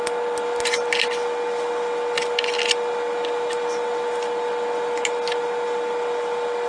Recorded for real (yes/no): yes